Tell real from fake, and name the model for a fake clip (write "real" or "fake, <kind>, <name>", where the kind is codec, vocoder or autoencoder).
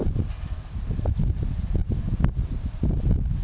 real